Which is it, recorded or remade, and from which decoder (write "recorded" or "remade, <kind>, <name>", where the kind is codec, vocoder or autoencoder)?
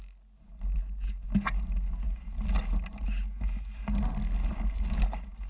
recorded